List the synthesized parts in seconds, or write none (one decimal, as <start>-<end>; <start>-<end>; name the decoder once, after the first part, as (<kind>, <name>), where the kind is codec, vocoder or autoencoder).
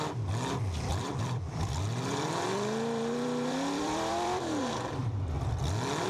0.9-4.6 (vocoder, BigVGAN v2); 5.0-5.6